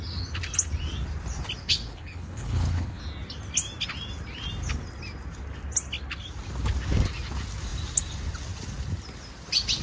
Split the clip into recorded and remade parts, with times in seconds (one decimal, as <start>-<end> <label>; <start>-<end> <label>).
0.0-1.6 recorded; 1.6-3.0 remade; 3.0-9.8 recorded